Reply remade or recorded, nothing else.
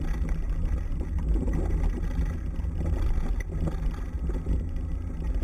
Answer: recorded